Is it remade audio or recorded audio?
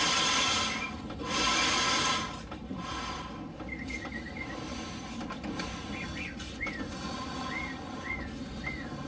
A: recorded